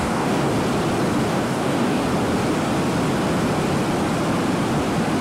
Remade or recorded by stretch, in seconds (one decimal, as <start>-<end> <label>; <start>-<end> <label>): 0.0-0.5 remade; 0.5-1.3 recorded; 1.3-2.0 remade; 2.0-5.2 recorded